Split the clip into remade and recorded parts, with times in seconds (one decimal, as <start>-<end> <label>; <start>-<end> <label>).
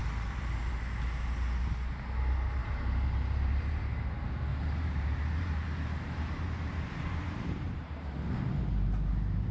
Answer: 0.0-2.6 recorded; 2.6-3.9 remade; 3.9-4.5 recorded; 4.5-8.1 remade; 8.1-9.5 recorded